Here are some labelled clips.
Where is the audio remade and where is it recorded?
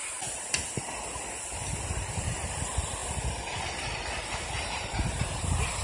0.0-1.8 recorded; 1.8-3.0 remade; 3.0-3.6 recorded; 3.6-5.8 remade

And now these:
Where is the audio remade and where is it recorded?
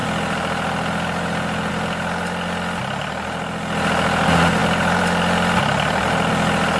0.0-4.6 recorded; 4.6-6.3 remade; 6.3-6.8 recorded